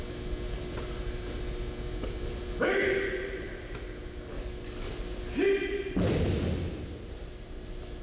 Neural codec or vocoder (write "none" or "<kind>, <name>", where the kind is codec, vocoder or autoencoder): none